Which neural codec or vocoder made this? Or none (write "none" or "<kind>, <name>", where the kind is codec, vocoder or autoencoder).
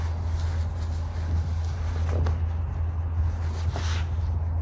none